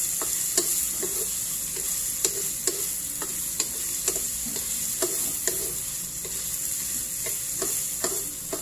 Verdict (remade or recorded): recorded